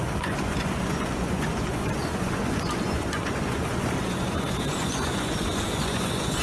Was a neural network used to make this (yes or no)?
yes